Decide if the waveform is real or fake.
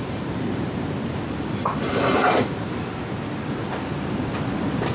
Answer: fake